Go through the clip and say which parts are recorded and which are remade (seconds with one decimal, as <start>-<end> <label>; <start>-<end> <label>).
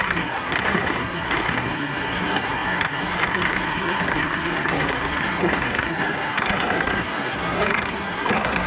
0.0-8.7 remade